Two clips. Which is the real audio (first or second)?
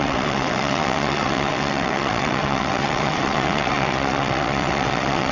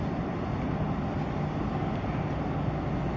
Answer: second